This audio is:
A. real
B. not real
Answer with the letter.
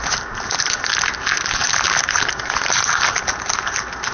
A